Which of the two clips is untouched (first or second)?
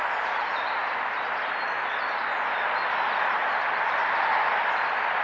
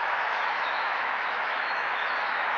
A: first